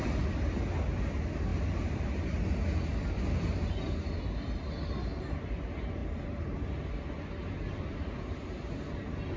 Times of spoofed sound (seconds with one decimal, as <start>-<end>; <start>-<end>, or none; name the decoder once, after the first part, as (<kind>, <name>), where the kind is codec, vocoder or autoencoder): none